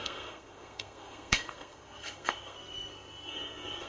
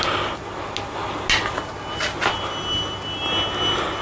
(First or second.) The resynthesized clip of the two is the first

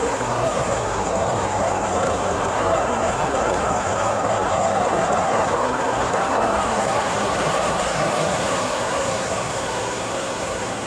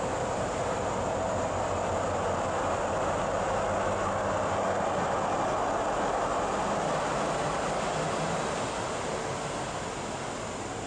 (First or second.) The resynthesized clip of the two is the first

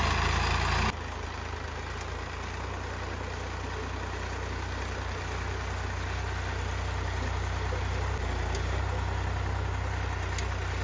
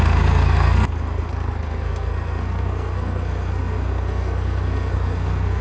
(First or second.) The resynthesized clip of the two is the second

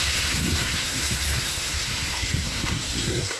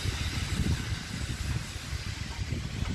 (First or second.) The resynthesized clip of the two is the first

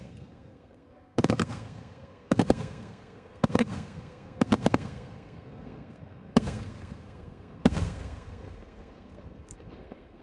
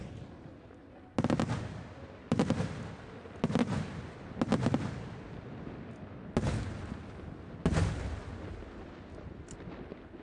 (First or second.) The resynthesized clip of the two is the first